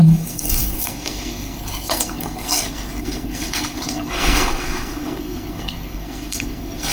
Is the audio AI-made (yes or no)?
yes